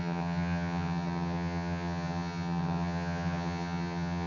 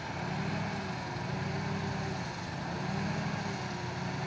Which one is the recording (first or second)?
second